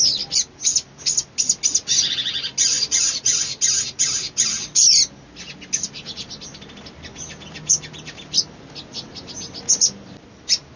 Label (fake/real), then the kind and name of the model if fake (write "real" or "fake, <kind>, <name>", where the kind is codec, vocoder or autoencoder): real